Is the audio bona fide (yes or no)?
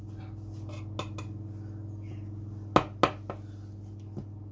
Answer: yes